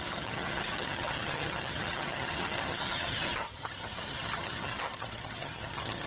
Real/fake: fake